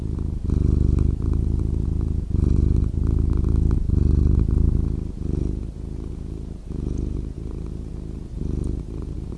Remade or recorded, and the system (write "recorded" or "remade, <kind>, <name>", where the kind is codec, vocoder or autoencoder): recorded